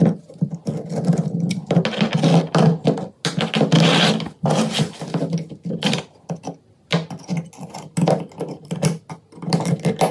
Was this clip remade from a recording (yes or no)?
no